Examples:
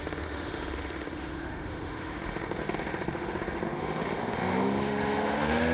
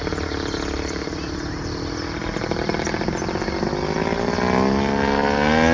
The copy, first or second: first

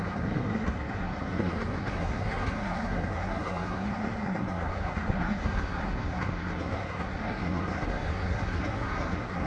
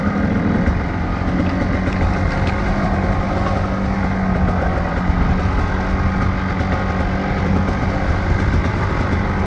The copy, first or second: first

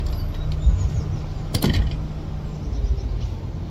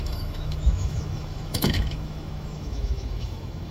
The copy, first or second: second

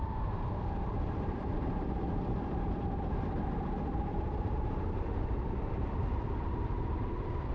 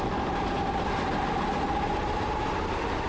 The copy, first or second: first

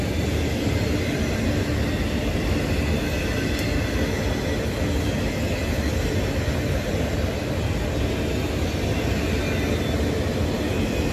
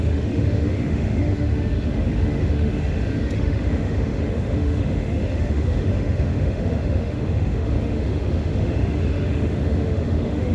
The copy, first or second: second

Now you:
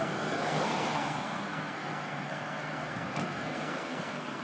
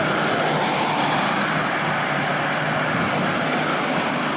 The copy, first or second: first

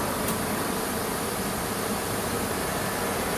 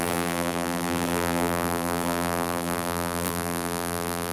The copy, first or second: second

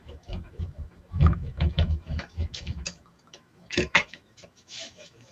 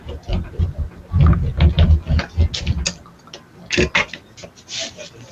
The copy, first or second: first